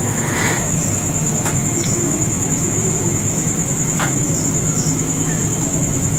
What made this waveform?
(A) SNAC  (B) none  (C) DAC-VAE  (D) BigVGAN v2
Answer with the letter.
C